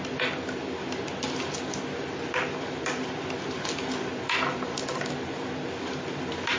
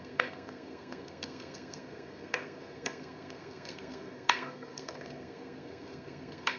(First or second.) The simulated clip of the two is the second